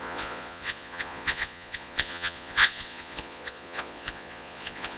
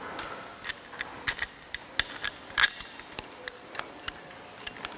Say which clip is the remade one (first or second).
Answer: first